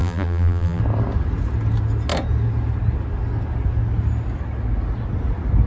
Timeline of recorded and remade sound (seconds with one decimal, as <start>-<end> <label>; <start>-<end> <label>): 0.0-0.8 remade; 0.8-5.7 recorded